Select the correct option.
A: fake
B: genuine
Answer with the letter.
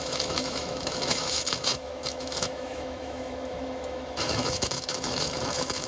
A